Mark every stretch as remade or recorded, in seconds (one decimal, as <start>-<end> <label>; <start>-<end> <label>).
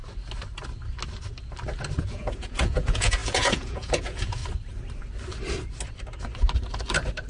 0.0-2.0 recorded; 2.0-4.4 remade; 4.4-7.3 recorded